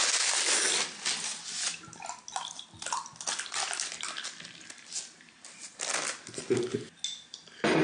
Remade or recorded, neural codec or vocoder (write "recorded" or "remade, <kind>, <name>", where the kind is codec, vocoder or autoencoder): recorded